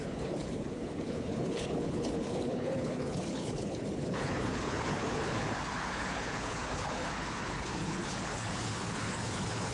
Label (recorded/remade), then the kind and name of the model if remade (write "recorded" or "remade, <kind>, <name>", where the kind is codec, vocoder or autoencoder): remade, codec, HILCodec